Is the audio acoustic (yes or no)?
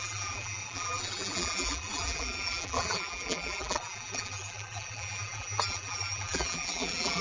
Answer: no